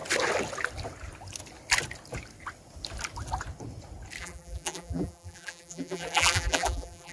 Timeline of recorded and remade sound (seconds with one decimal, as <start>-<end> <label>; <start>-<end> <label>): 0.0-4.2 recorded; 4.2-7.1 remade